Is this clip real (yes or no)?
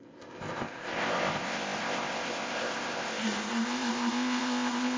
no